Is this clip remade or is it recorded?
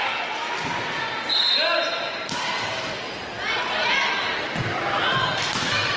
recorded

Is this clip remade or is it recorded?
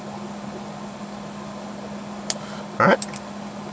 recorded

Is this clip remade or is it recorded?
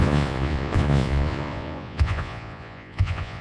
remade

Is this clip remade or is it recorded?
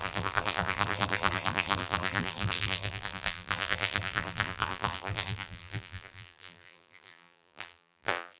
remade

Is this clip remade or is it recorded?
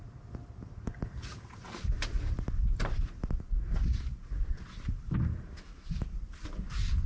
recorded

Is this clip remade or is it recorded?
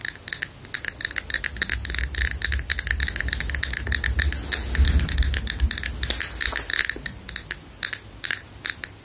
recorded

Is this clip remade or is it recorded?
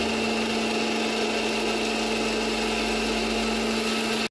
recorded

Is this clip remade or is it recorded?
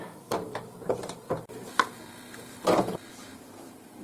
remade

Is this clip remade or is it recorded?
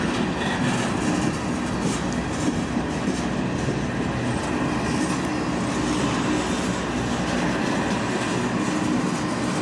recorded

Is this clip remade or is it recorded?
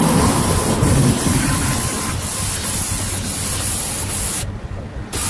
recorded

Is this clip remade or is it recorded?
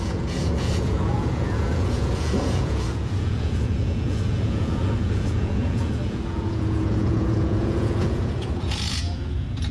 remade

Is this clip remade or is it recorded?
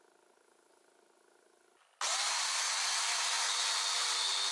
recorded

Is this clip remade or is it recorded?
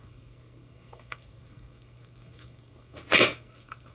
remade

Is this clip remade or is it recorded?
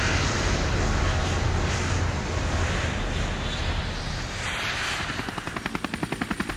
recorded